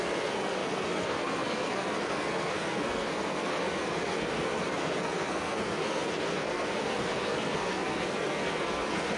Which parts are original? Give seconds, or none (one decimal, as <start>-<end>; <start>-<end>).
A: none